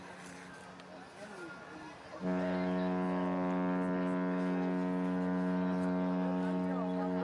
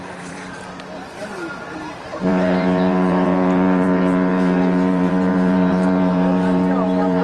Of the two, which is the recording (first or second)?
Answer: first